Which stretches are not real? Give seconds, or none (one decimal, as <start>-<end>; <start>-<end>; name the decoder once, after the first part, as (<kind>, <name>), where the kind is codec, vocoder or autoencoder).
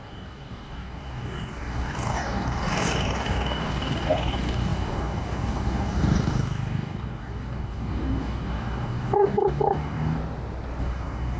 0.0-10.2 (codec, DAC); 10.8-11.4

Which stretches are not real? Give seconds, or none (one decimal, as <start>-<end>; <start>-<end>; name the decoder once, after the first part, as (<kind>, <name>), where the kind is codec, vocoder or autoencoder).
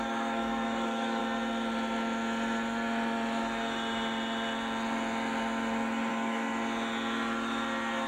0.0-1.2 (codec, DAC); 6.1-6.5